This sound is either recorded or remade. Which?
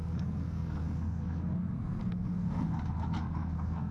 remade